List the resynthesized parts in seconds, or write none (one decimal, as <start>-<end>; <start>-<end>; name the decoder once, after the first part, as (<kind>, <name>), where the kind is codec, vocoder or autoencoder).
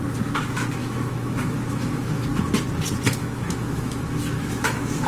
0.8-2.2 (autoencoder, DAC-VAE); 3.2-5.1